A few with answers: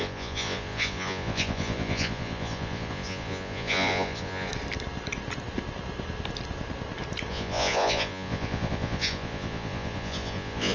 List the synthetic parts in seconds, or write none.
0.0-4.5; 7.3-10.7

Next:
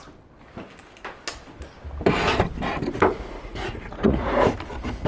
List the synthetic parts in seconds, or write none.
3.1-4.5